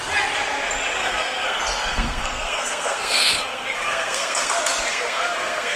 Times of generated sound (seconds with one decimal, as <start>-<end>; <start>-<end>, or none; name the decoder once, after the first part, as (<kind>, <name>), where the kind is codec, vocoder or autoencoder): 1.0-4.5 (codec, SNAC); 4.9-5.8